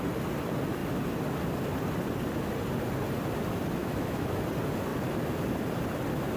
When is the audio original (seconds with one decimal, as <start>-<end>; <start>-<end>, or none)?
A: 0.0-3.8; 4.4-6.4